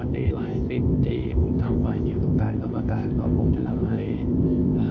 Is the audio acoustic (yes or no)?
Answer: no